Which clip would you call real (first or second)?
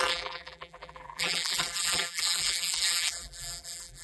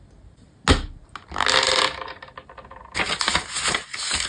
second